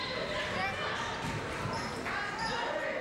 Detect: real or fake real